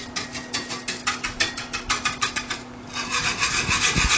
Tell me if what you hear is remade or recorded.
recorded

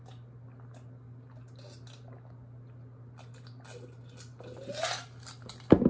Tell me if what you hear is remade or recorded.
recorded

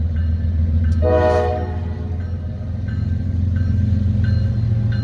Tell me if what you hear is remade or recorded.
recorded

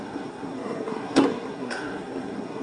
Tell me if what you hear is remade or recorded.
remade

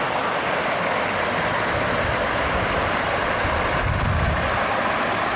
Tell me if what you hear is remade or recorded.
recorded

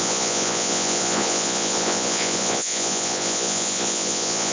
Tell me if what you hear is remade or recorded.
remade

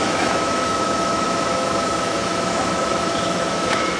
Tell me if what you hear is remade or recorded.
remade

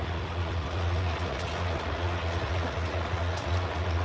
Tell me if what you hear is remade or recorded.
remade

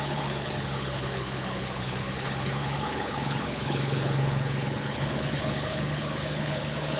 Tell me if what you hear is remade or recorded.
remade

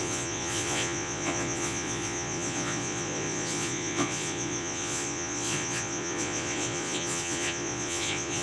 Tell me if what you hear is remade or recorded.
remade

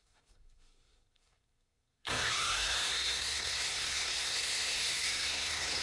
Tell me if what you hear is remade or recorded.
remade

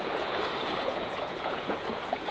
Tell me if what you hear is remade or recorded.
remade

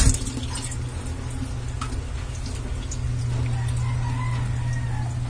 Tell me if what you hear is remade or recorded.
recorded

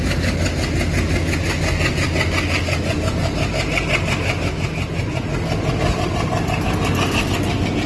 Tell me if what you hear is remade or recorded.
recorded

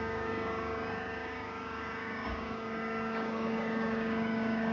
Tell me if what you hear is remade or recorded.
remade